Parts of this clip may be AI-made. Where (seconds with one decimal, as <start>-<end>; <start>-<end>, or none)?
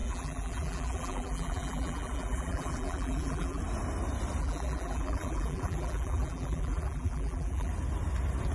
0.0-3.6; 4.4-7.7